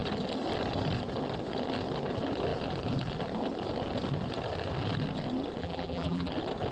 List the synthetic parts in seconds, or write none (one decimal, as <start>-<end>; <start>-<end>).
5.6-6.3